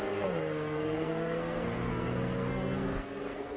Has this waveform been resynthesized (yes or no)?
yes